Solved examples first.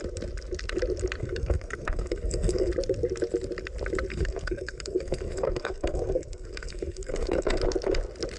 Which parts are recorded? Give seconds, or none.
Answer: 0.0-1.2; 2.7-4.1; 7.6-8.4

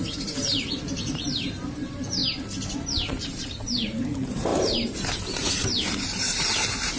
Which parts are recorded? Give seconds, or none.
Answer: 2.2-3.2

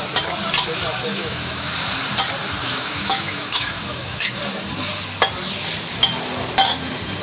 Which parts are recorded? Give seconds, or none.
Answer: 0.0-1.1; 1.7-2.6; 4.4-7.2

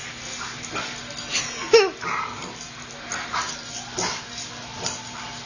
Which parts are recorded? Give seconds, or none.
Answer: 0.0-5.5